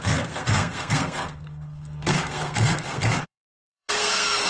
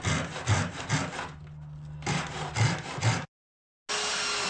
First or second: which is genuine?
second